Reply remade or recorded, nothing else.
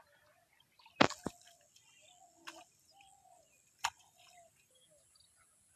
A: recorded